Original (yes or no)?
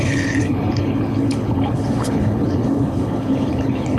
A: no